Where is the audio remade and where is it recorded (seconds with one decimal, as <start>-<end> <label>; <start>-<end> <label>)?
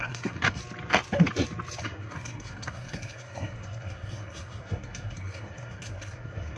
0.0-0.6 remade; 0.6-1.8 recorded; 1.8-6.6 remade